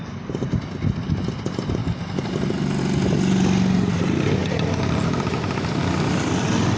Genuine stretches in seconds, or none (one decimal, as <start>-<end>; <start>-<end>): 0.0-4.4; 5.8-6.8